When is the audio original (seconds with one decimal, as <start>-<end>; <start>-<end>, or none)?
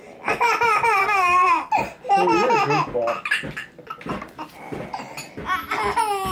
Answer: 0.0-1.0; 1.7-6.3